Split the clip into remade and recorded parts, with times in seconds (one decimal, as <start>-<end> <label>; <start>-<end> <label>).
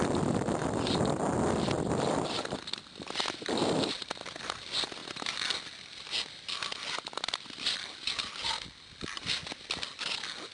0.0-10.5 recorded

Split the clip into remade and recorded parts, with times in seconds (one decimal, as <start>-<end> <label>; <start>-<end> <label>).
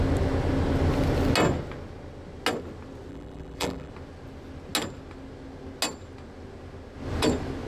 0.0-3.1 recorded; 3.1-3.9 remade; 3.9-7.7 recorded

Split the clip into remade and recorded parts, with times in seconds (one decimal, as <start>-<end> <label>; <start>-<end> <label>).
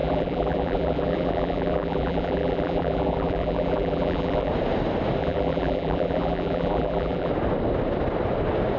0.0-4.5 remade; 4.5-5.2 recorded; 5.2-7.3 remade; 7.3-8.8 recorded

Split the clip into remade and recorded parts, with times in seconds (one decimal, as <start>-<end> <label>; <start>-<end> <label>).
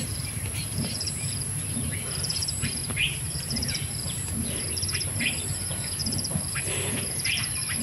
0.0-7.8 remade